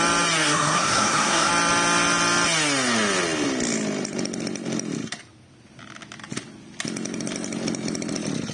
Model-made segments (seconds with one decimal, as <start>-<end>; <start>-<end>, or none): 0.4-1.5